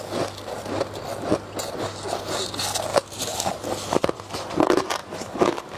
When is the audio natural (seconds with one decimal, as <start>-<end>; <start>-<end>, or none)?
0.0-2.9; 3.5-5.0